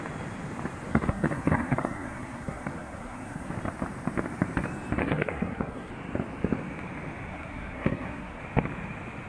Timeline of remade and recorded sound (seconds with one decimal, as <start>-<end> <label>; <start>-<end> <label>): 0.0-0.9 recorded; 0.9-3.5 remade; 3.5-5.0 recorded; 5.0-5.9 remade; 5.9-7.3 recorded; 7.3-8.4 remade; 8.4-9.3 recorded